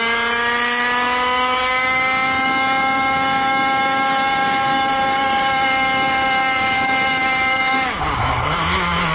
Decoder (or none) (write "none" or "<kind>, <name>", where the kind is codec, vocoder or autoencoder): codec, DAC